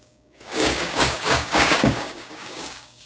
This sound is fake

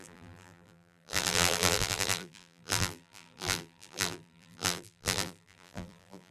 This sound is fake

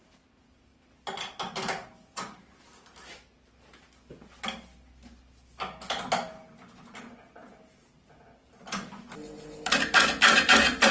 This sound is real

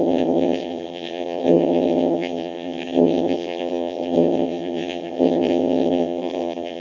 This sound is fake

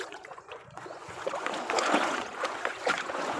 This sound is fake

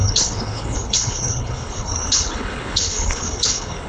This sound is fake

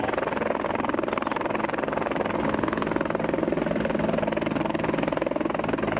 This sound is real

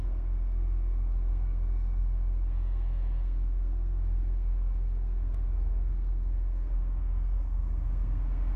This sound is fake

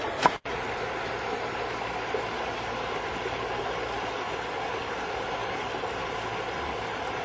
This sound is real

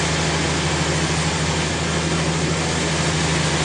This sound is real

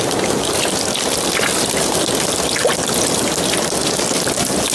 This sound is real